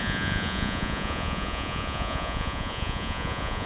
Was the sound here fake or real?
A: fake